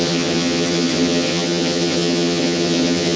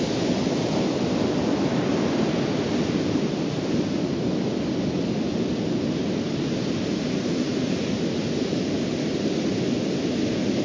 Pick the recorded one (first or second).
second